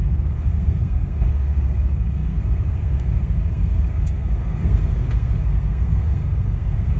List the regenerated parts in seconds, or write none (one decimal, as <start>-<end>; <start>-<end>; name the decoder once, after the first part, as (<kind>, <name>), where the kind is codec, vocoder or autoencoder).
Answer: 0.0-7.0 (codec, SNAC)